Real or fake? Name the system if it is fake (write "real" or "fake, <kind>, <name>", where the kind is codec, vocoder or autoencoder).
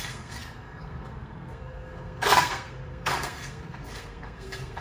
fake, codec, SNAC